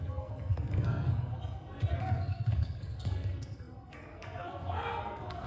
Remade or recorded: remade